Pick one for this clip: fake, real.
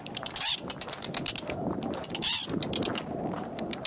fake